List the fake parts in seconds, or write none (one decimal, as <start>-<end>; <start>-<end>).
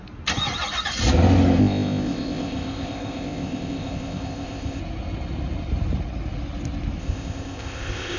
1.6-4.8; 7.0-8.2